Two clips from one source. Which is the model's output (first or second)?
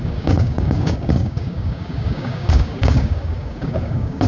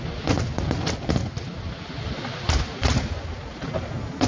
first